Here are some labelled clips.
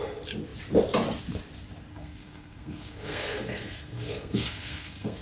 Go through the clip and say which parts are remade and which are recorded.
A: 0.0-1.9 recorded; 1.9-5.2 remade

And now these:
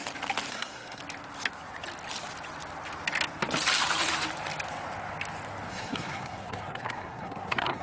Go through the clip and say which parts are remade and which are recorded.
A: 0.0-0.5 recorded; 0.5-1.0 remade; 1.0-5.7 recorded; 5.7-7.8 remade

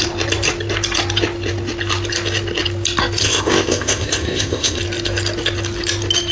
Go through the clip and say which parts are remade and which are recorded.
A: 0.0-3.2 recorded; 3.2-4.8 remade; 4.8-6.3 recorded

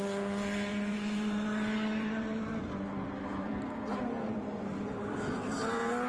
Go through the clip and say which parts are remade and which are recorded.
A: 0.0-0.7 recorded; 0.7-4.4 remade; 4.4-6.1 recorded

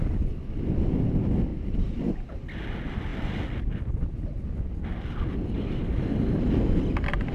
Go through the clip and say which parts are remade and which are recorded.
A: 0.0-1.5 recorded; 1.5-2.0 remade; 2.0-7.3 recorded